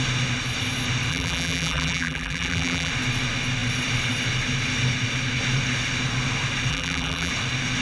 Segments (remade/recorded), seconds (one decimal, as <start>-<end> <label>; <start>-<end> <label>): 0.0-1.1 recorded; 1.1-2.9 remade; 2.9-6.7 recorded; 6.7-7.3 remade; 7.3-7.8 recorded